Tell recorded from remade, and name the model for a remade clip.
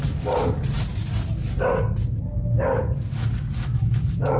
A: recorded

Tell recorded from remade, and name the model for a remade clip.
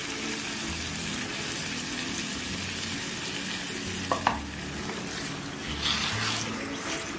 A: recorded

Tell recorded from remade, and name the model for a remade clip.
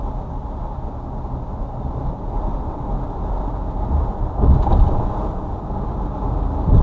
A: recorded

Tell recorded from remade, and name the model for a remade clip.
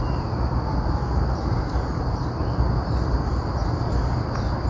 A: recorded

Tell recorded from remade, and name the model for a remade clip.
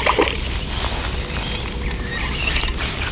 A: recorded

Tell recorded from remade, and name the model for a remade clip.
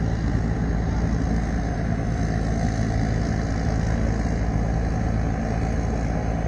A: recorded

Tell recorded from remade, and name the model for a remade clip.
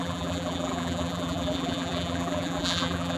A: remade, vocoder, BigVGAN v2